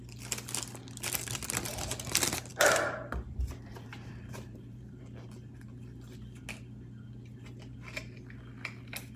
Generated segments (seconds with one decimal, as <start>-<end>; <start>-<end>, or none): 2.5-5.0